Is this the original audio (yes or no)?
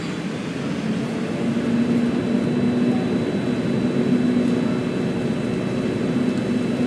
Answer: yes